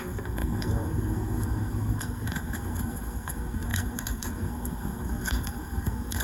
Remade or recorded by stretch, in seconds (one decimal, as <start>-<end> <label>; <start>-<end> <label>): 0.0-6.2 remade

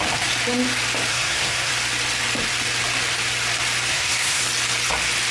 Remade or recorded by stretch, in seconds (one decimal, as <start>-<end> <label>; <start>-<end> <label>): 0.0-1.1 recorded; 1.1-1.7 remade; 1.7-3.9 recorded; 3.9-4.4 remade; 4.4-5.3 recorded

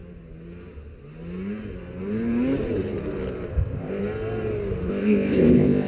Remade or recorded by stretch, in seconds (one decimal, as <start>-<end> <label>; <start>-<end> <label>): 0.0-3.5 recorded; 3.5-4.0 remade; 4.0-4.9 recorded; 4.9-5.9 remade

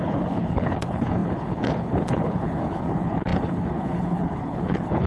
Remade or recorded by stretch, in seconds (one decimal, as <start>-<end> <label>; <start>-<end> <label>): 0.0-5.1 remade